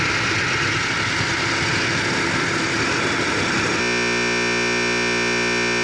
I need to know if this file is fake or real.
real